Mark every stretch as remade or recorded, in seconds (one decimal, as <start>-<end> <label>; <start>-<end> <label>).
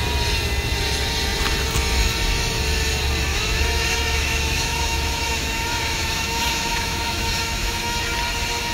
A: 0.0-3.3 recorded; 3.3-8.0 remade; 8.0-8.7 recorded